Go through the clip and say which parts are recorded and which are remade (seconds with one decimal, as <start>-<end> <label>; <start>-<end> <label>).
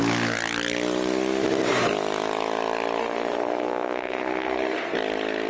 0.0-3.0 recorded; 3.0-4.9 remade; 4.9-5.5 recorded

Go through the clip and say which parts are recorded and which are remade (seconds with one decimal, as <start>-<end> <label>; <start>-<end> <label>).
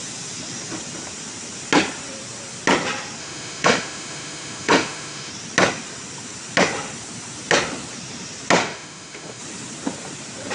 0.0-3.2 recorded; 3.2-5.3 remade; 5.3-8.6 recorded; 8.6-9.4 remade; 9.4-10.5 recorded